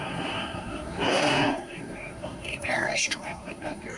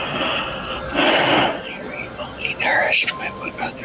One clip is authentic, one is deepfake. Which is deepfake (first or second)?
first